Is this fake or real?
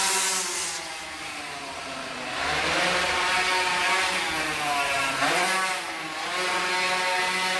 real